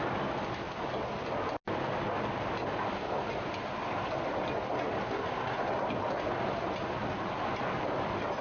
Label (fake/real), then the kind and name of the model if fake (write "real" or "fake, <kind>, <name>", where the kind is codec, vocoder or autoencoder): real